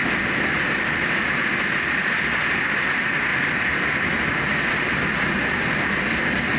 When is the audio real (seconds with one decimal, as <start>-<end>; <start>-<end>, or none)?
0.0-6.6